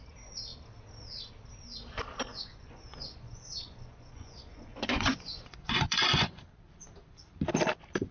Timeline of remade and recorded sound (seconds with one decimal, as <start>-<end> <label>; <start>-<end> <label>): 0.0-2.3 recorded; 2.3-6.4 remade; 6.4-8.1 recorded